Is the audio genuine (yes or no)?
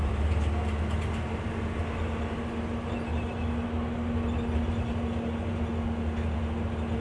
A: yes